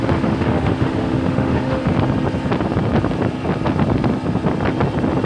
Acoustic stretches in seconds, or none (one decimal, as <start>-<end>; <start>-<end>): 1.8-5.3